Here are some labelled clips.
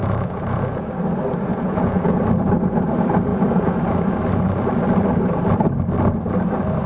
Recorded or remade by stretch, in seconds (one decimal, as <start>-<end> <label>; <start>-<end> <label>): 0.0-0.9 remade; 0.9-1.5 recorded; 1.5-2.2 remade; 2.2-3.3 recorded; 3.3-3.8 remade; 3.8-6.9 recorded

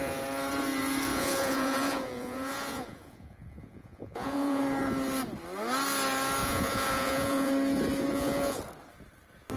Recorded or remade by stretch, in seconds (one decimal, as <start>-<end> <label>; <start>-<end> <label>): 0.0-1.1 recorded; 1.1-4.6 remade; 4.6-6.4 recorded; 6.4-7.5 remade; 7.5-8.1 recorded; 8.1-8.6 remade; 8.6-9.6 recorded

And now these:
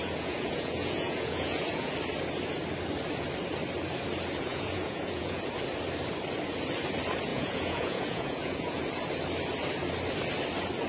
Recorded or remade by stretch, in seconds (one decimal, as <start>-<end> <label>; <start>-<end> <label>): 0.0-1.9 remade; 1.9-4.5 recorded; 4.5-5.4 remade; 5.4-7.3 recorded; 7.3-8.8 remade; 8.8-10.9 recorded